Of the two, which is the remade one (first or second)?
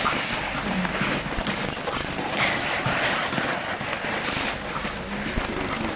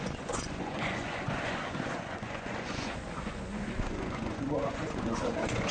second